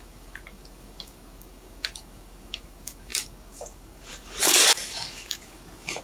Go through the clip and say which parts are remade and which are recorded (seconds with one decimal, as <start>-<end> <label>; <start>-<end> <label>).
0.0-6.0 remade